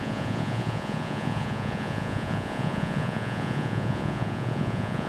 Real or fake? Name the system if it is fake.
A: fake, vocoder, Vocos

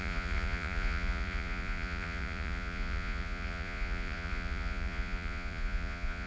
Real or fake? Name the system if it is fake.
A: fake, vocoder, Vocos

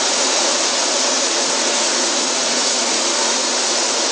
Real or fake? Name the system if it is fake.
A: fake, vocoder, Vocos